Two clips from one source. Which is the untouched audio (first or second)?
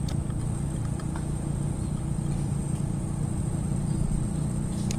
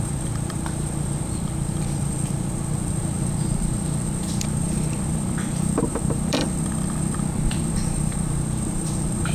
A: first